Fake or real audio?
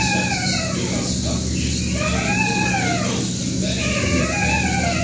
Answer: real